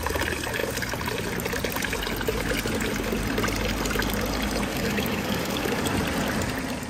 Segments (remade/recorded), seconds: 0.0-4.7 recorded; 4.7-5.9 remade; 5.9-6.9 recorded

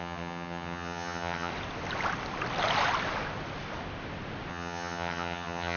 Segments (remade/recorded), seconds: 0.0-1.5 remade; 1.5-4.5 recorded; 4.5-5.8 remade

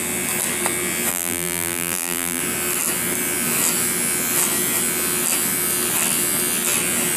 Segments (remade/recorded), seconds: 0.0-1.1 recorded; 1.1-2.4 remade; 2.4-7.2 recorded